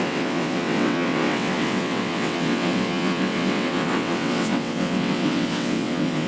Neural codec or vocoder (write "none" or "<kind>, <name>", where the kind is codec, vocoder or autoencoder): vocoder, WaveNeXt